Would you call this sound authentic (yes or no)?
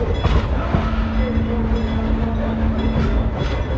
yes